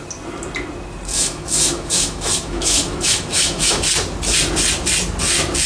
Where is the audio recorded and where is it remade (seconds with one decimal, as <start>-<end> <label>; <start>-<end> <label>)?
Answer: 0.0-1.1 recorded; 1.1-3.8 remade; 3.8-5.7 recorded